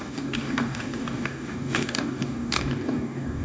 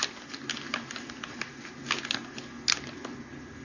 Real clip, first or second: second